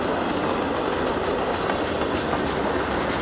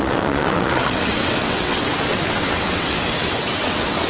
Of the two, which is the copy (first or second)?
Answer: second